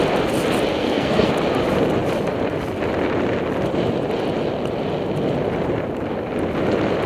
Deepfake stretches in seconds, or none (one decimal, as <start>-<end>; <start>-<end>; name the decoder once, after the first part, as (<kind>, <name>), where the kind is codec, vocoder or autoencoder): 0.7-1.3 (codec, SNAC)